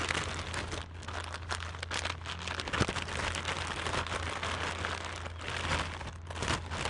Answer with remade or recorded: recorded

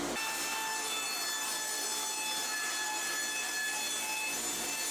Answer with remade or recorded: recorded